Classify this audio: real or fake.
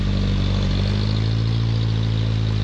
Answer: real